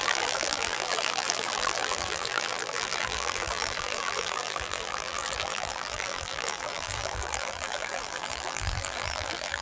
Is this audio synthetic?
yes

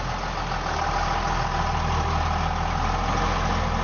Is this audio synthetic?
no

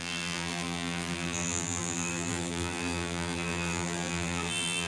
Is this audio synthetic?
yes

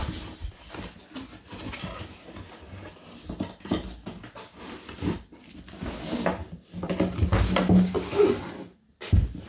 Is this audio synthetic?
no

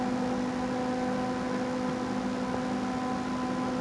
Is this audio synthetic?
no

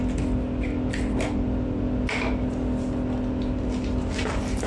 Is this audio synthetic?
no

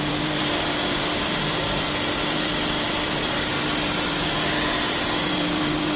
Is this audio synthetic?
yes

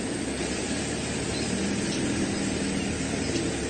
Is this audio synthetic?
no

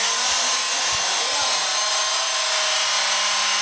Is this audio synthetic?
no